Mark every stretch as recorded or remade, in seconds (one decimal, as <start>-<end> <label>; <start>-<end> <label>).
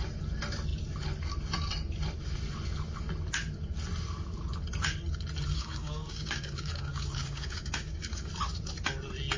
0.0-5.5 recorded; 5.5-8.3 remade; 8.3-9.4 recorded